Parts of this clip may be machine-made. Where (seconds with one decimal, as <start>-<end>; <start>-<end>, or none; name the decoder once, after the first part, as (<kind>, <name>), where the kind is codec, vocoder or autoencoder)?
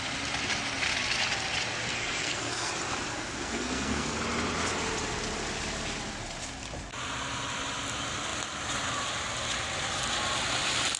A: 1.9-2.7 (codec, SNAC); 3.1-4.2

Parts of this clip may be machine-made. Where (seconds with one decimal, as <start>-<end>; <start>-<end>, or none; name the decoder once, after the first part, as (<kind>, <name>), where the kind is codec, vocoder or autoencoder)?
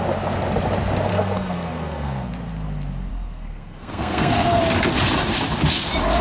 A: 1.1-2.3 (codec, SNAC); 3.1-4.6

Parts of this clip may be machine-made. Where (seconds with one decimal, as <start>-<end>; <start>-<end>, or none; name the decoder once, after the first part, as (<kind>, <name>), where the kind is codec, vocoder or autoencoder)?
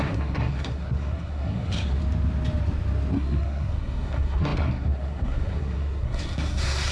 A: 0.0-2.0 (codec, SNAC); 3.1-6.9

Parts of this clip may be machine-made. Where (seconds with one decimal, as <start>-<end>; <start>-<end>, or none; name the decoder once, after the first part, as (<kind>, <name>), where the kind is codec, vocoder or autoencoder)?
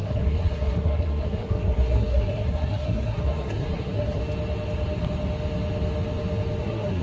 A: 0.0-4.2 (codec, SNAC); 6.6-7.0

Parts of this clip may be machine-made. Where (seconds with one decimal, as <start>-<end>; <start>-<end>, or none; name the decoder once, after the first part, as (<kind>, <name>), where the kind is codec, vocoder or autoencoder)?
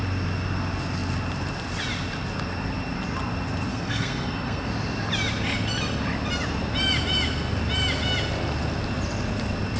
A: 3.7-4.7 (codec, SNAC)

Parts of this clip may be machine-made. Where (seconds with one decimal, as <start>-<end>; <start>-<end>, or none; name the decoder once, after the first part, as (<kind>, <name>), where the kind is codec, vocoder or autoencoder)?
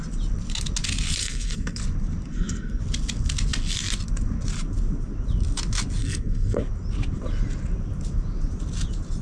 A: 1.2-1.8 (codec, SNAC); 2.3-2.8; 6.0-6.6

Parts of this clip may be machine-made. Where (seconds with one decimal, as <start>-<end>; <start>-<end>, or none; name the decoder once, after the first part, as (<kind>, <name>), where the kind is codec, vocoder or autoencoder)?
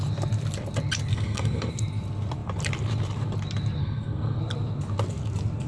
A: 1.1-1.7 (codec, SNAC); 3.8-4.4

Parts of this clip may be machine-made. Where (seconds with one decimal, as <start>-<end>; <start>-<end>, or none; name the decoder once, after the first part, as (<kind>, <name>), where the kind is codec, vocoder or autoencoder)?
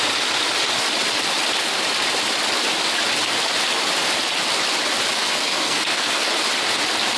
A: 5.2-6.3 (codec, SNAC)